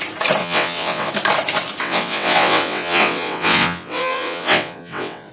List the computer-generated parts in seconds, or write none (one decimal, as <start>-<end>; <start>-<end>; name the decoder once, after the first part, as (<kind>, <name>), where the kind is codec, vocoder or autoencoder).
0.4-1.1 (vocoder, WaveNeXt); 1.8-5.3